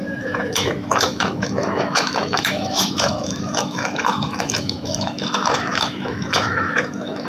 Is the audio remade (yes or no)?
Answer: yes